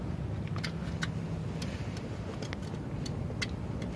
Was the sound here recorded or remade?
recorded